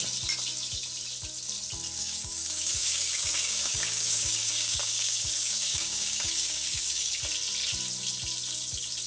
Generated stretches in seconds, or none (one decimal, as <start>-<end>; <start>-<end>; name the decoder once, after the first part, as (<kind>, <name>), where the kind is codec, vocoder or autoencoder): 2.0-7.2 (codec, DAC)